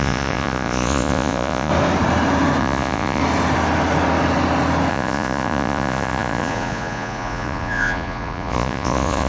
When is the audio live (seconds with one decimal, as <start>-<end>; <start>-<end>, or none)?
1.7-2.6; 3.2-4.9